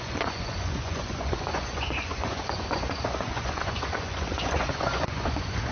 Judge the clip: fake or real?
fake